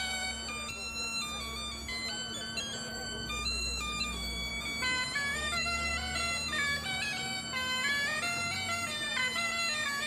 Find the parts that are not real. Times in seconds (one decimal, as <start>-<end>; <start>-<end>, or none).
2.9-4.5; 5.3-5.9